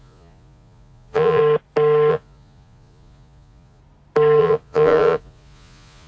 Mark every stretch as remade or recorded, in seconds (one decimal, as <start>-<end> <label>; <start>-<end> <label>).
0.0-1.4 remade; 1.4-2.1 recorded; 2.1-3.8 remade; 3.8-4.4 recorded; 4.4-6.1 remade